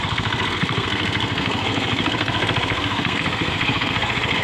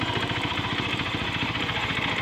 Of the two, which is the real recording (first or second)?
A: second